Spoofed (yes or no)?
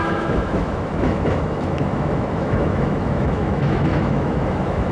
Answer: yes